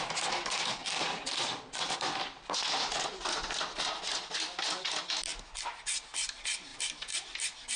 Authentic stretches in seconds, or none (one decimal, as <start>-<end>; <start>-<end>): 0.0-0.8; 2.6-7.8